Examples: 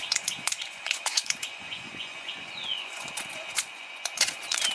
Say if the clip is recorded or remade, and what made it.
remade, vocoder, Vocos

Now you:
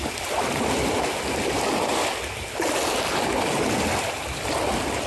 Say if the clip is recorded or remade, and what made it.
recorded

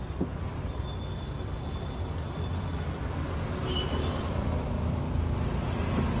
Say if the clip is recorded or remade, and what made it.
recorded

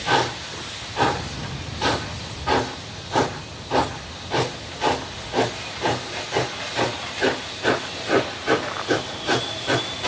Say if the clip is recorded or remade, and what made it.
recorded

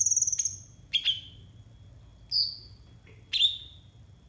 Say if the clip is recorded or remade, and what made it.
recorded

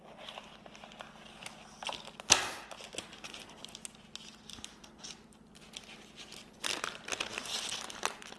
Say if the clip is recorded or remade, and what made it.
recorded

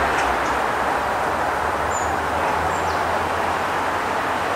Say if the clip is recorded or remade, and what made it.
recorded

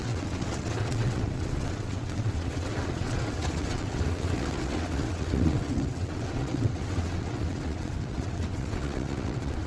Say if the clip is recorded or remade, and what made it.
remade, vocoder, WaveNeXt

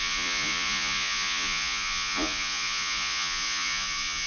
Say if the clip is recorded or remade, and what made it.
remade, vocoder, Vocos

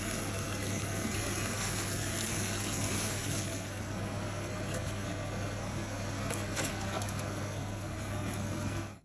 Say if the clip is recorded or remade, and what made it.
remade, codec, SNAC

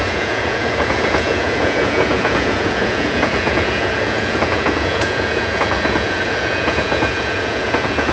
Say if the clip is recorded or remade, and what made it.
remade, vocoder, Vocos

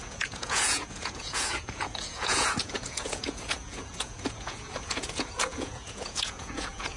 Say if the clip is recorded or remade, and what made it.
remade, vocoder, Vocos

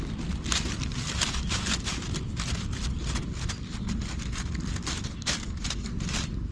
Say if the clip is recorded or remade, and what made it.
recorded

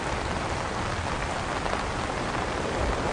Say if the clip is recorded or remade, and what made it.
recorded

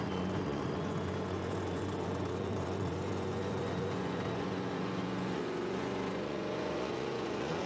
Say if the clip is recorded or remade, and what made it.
remade, vocoder, Vocos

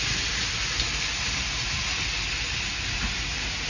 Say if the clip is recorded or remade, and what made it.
recorded